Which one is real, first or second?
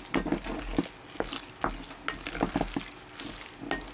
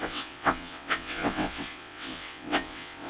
first